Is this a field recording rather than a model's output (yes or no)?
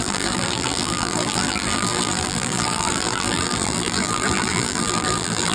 no